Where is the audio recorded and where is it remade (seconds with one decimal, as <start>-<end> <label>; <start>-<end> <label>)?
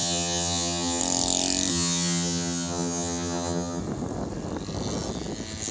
0.0-1.0 remade; 1.0-1.7 recorded; 1.7-3.8 remade; 3.8-5.7 recorded